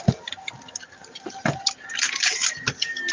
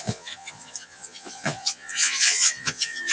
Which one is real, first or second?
first